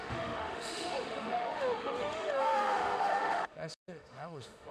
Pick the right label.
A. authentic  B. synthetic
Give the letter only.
B